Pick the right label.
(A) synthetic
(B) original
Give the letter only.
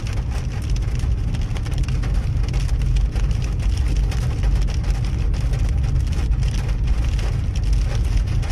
B